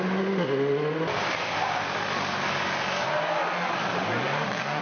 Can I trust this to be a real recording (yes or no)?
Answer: yes